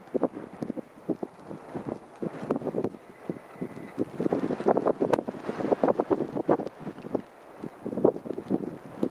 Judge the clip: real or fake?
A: real